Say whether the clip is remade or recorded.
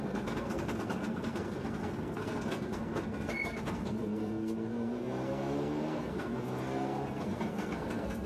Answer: remade